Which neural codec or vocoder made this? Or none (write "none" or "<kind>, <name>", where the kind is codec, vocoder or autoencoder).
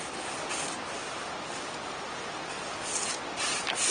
none